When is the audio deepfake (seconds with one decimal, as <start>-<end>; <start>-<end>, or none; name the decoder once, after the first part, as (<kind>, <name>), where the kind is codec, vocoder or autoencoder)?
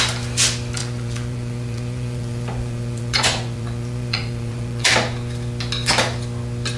0.8-4.9 (vocoder, Vocos)